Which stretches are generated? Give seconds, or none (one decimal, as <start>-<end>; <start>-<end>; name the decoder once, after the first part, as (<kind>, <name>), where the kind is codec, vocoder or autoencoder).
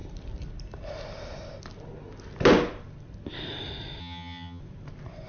4.0-4.6 (vocoder, HiFi-GAN)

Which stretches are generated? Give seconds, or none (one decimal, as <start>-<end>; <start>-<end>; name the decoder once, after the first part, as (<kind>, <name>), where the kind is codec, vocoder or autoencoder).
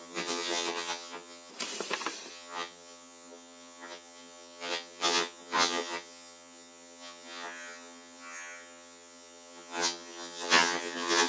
0.0-1.5 (vocoder, HiFi-GAN); 2.3-11.3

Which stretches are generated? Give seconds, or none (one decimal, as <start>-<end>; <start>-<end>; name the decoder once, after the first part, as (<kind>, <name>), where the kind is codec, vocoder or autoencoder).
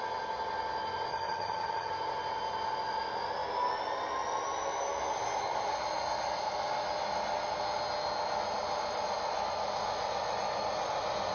1.1-1.9 (vocoder, HiFi-GAN)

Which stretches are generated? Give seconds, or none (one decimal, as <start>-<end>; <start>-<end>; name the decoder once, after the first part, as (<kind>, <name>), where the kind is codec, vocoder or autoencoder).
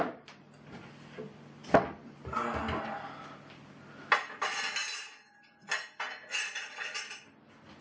none